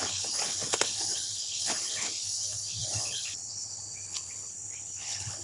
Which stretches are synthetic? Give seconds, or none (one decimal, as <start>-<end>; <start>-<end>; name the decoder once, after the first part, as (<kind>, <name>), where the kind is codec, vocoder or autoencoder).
0.0-5.4 (codec, HILCodec)